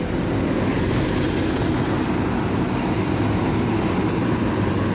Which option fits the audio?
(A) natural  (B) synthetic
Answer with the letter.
A